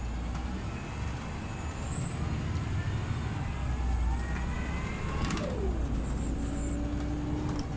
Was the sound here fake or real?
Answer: real